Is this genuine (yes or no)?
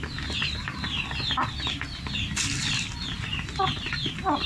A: yes